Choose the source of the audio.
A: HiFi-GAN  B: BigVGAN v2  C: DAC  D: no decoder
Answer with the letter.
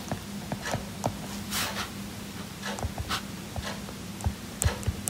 D